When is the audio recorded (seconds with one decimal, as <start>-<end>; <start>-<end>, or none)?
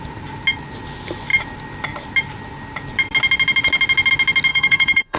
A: 0.0-4.5